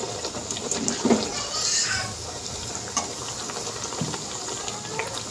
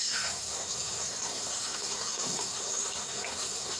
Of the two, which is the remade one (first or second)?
second